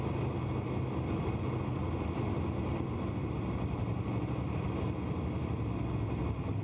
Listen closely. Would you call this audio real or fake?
real